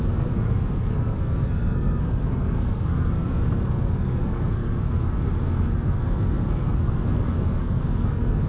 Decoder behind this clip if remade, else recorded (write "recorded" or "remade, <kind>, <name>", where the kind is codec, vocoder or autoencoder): remade, codec, SNAC